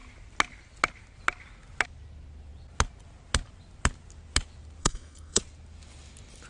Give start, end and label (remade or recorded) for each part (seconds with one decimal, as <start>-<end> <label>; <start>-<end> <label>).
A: 0.0-4.8 recorded; 4.8-5.4 remade; 5.4-6.5 recorded